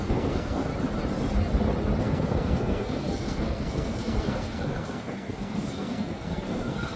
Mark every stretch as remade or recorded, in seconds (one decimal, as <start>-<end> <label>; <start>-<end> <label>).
0.0-0.7 remade; 0.7-2.0 recorded; 2.0-7.0 remade